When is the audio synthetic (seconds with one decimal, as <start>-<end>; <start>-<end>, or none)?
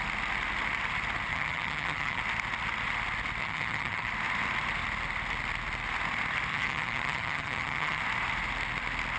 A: 1.3-2.2; 3.4-4.1; 6.5-8.0